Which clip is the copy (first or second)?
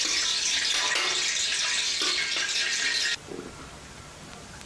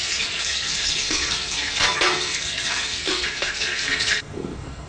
second